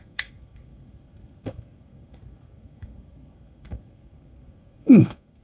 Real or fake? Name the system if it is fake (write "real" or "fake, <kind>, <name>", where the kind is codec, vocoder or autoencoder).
fake, codec, SNAC